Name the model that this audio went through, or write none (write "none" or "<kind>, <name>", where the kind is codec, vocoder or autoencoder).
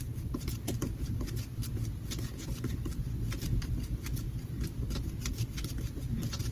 none